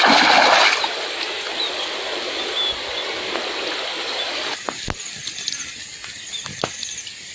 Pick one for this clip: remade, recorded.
recorded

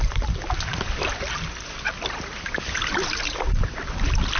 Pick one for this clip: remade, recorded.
recorded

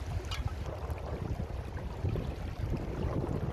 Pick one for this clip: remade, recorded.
recorded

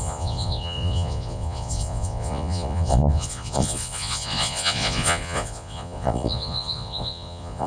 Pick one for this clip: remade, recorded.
remade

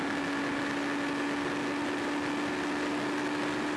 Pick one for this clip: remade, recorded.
recorded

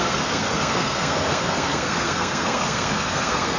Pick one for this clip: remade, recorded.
remade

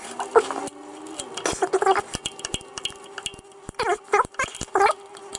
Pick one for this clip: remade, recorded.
recorded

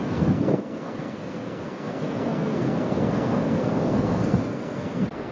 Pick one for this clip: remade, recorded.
remade